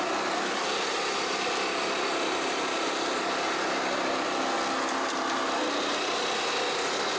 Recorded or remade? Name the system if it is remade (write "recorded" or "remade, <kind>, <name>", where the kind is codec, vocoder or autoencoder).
recorded